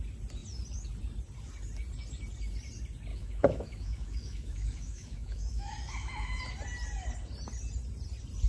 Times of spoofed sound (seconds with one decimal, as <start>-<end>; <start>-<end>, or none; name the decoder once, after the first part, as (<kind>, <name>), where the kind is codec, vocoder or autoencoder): 3.1-6.4 (autoencoder, DAC-VAE)